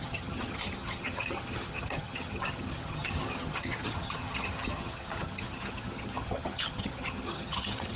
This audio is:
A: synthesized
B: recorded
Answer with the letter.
A